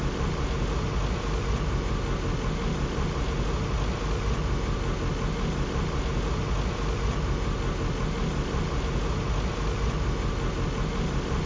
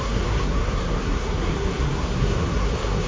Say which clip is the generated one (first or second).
second